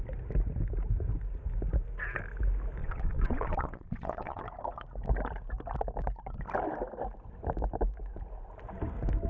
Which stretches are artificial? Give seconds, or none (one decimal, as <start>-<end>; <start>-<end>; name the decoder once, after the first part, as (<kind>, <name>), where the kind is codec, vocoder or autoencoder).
2.8-4.4 (vocoder, WaveNeXt)